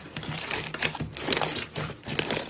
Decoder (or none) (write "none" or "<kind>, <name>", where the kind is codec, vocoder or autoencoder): vocoder, BigVGAN v2